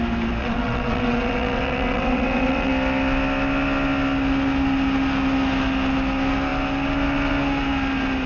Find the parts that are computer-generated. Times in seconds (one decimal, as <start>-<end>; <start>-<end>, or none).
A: 0.4-2.7